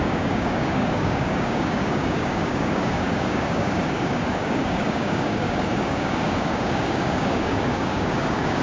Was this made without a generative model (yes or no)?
no